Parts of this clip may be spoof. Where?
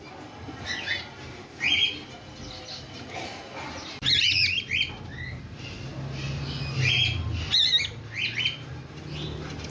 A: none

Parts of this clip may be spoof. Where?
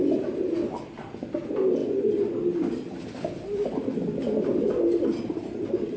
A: none